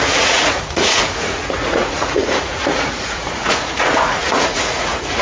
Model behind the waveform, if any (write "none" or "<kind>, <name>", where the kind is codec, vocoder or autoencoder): vocoder, Vocos